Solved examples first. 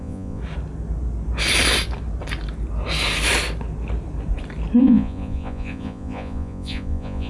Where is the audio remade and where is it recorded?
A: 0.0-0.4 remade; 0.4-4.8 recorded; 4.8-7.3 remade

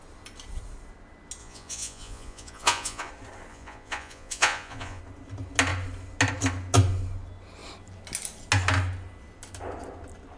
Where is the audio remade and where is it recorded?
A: 0.0-1.4 recorded; 1.4-3.1 remade; 3.1-3.5 recorded; 3.5-5.0 remade; 5.0-10.4 recorded

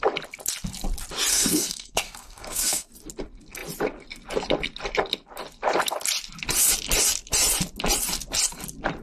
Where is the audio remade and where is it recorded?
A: 0.0-1.3 recorded; 1.3-2.9 remade; 2.9-9.0 recorded

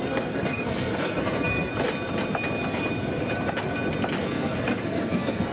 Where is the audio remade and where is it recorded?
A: 0.0-1.7 remade; 1.7-4.2 recorded; 4.2-5.5 remade

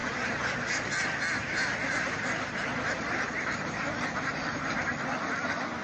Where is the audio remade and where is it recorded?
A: 0.0-0.9 remade; 0.9-1.4 recorded; 1.4-4.9 remade; 4.9-5.8 recorded

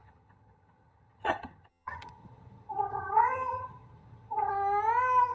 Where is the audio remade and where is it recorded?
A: 0.0-4.5 remade; 4.5-5.3 recorded